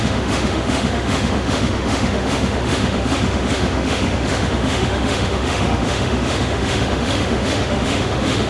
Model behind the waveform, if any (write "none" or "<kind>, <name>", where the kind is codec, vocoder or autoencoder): autoencoder, DAC-VAE